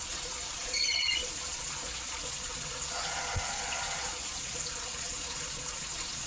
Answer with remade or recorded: remade